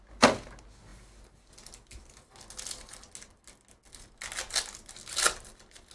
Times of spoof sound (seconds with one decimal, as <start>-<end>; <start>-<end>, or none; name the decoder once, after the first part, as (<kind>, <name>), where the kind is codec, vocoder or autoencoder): none